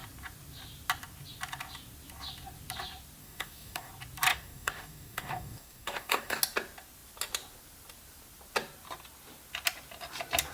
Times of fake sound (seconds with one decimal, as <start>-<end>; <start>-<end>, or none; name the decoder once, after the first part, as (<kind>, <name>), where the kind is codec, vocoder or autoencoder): 3.2-3.9 (codec, DAC); 4.3-6.4